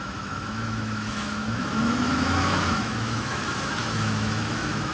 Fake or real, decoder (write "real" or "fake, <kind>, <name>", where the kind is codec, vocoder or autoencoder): fake, autoencoder, DAC-VAE